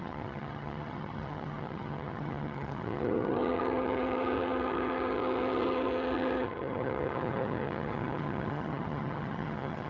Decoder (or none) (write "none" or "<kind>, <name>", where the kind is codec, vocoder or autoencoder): vocoder, HiFi-GAN